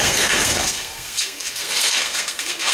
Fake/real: fake